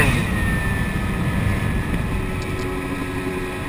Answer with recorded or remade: recorded